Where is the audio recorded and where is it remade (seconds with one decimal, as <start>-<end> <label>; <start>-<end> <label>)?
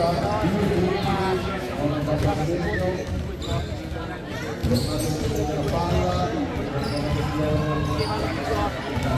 0.0-1.4 recorded; 1.4-3.1 remade; 3.1-9.2 recorded